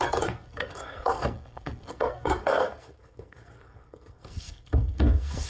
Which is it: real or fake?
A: fake